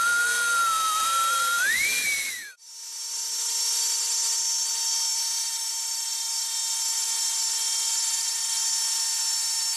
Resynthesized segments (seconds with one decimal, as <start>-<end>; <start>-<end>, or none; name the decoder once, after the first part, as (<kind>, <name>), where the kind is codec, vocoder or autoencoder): 1.0-2.7 (vocoder, BigVGAN v2); 5.1-5.7; 7.9-8.5